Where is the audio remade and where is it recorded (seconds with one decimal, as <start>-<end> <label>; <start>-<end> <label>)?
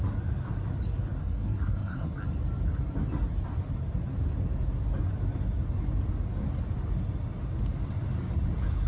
0.0-1.2 recorded; 1.2-2.2 remade; 2.2-8.9 recorded